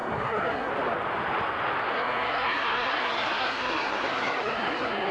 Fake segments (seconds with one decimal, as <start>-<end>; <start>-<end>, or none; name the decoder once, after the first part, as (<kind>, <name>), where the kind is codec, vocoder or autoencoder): 0.0-0.7 (codec, SNAC); 1.9-5.1